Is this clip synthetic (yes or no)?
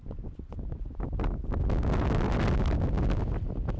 no